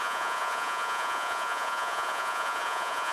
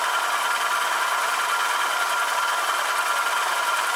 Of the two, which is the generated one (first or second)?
first